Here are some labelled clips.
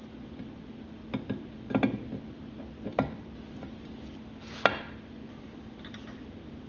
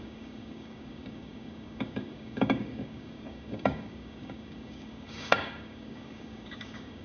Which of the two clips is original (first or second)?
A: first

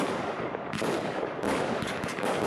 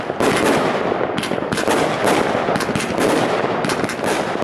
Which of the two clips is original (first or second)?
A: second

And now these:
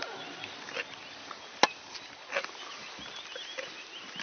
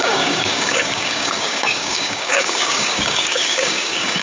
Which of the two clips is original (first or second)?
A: first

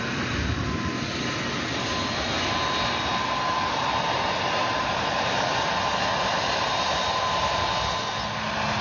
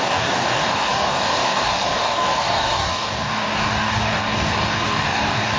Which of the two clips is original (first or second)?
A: first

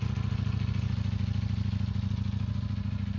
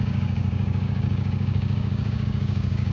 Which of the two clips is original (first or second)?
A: first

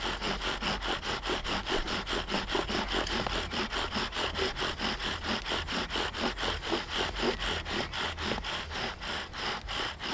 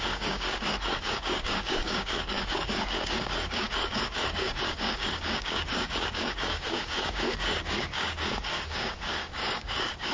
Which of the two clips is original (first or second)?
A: first